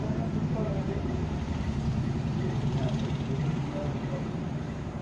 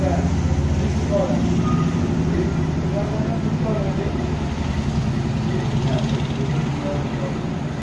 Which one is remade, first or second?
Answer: first